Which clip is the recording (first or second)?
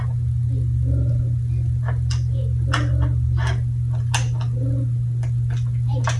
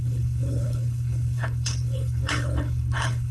first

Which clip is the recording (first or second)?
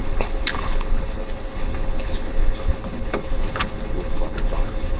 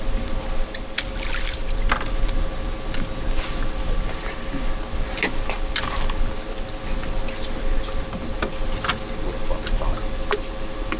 second